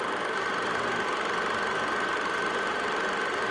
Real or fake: real